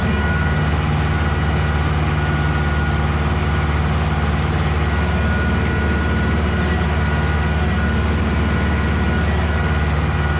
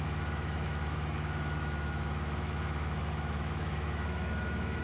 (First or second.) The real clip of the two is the first